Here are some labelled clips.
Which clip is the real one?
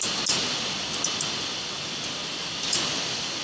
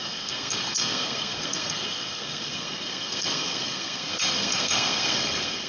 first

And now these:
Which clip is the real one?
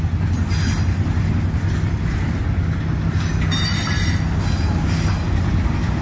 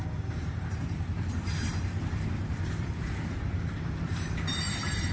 first